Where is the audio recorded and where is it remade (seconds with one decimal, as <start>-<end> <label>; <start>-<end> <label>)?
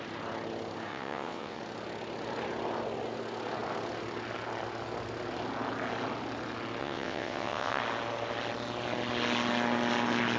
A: 0.0-0.9 recorded; 0.9-1.6 remade; 1.6-6.8 recorded; 6.8-7.8 remade; 7.8-10.4 recorded